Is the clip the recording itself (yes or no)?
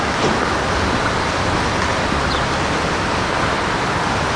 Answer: yes